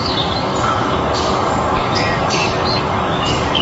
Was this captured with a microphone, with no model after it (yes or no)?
no